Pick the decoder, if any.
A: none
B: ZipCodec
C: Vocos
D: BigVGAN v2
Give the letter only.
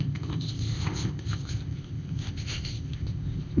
B